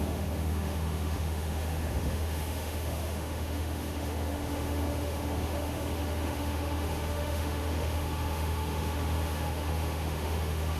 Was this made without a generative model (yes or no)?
no